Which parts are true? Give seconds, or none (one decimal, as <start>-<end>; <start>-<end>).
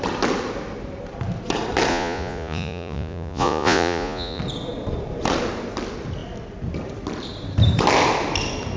0.0-1.9; 4.4-8.8